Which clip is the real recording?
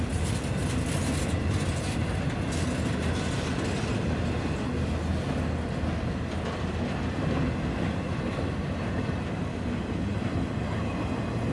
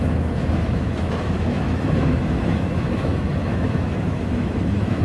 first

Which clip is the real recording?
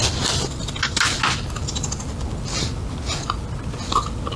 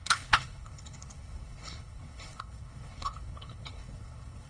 first